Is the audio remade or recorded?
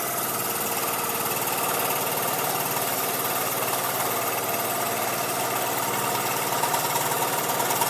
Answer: recorded